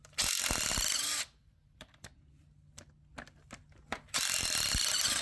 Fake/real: real